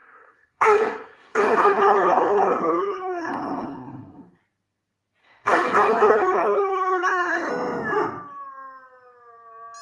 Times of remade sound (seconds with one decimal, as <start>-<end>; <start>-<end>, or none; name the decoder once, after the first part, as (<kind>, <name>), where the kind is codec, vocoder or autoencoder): 0.0-4.4 (codec, SNAC); 5.2-7.5